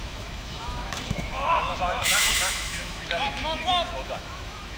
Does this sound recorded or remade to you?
remade